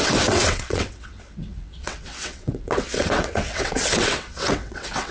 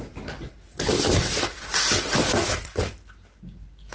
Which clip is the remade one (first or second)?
first